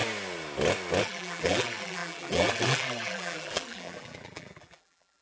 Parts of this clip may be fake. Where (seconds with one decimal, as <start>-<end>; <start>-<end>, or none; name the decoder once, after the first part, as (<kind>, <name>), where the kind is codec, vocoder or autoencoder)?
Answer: 1.0-5.2 (vocoder, BigVGAN v2)

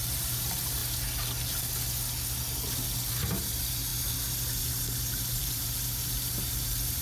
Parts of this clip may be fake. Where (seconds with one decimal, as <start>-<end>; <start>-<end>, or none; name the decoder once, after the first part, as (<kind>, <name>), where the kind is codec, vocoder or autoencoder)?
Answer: 0.0-0.8 (vocoder, BigVGAN v2); 3.1-3.9; 4.6-7.0